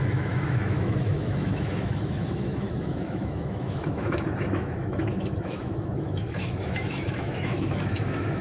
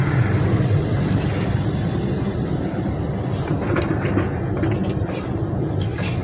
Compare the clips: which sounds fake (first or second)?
first